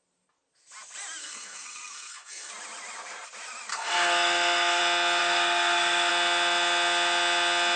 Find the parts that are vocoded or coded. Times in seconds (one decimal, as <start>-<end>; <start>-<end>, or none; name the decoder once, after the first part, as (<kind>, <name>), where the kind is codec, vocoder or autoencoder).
1.2-2.5 (codec, SNAC); 3.7-4.8; 5.2-6.1